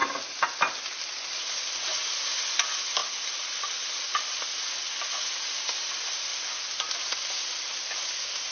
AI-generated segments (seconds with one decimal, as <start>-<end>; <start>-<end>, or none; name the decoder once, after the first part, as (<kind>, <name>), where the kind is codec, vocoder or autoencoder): none